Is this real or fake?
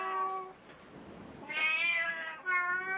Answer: real